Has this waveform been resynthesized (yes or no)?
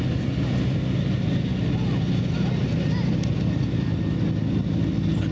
no